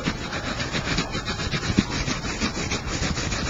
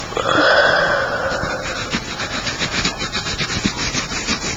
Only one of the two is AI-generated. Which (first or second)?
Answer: first